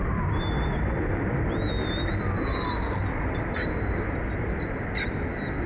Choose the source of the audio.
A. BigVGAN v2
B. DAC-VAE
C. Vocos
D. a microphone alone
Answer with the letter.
D